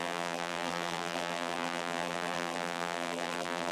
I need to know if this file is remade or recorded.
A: remade